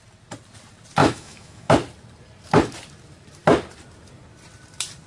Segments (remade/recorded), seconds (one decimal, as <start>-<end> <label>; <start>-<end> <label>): 0.0-1.0 recorded; 1.0-1.7 remade; 1.7-5.1 recorded